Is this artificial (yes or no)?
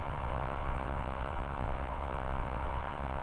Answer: yes